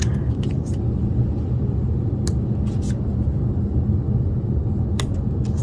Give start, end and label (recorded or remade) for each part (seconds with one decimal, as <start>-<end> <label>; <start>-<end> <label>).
0.0-5.6 recorded